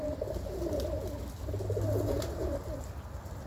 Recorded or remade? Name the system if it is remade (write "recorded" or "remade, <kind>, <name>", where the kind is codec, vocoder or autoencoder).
recorded